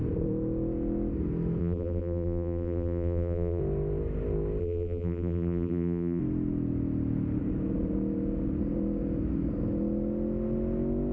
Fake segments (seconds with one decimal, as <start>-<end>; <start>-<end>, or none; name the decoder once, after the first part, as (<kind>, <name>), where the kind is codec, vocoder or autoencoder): 1.6-3.6 (vocoder, BigVGAN v2); 4.6-6.2